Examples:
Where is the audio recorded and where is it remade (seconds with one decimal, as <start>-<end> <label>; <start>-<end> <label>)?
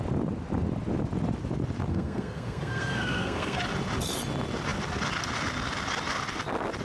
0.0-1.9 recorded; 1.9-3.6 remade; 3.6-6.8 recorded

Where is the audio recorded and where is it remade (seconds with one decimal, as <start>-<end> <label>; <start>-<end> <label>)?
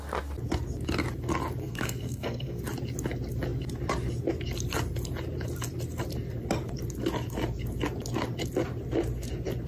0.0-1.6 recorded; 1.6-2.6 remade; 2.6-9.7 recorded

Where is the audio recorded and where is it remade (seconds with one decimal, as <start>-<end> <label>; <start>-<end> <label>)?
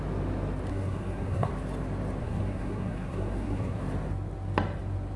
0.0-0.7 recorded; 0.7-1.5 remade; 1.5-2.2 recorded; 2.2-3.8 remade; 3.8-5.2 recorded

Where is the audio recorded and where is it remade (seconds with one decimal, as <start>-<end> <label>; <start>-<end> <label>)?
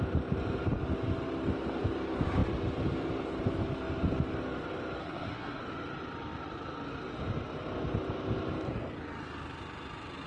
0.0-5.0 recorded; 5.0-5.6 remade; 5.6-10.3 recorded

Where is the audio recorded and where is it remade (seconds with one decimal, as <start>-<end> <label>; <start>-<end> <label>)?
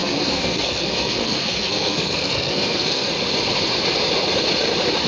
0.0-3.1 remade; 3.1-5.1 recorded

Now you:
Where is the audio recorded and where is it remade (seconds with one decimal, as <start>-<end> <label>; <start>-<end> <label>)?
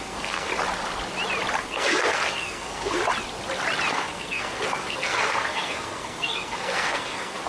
0.0-0.5 remade; 0.5-1.6 recorded; 1.6-3.0 remade; 3.0-3.9 recorded; 3.9-7.5 remade